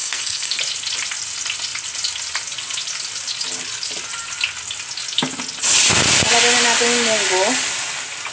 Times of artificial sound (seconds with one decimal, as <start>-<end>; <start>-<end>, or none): 0.0-0.6